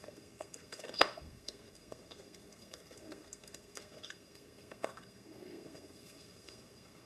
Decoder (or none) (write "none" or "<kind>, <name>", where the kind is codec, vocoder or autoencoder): codec, SNAC